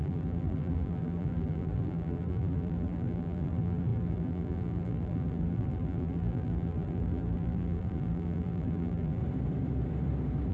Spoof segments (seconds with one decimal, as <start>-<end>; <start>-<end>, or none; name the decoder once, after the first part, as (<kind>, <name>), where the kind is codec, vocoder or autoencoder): 0.0-9.2 (vocoder, BigVGAN v2)